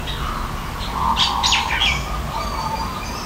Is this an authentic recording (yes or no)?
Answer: yes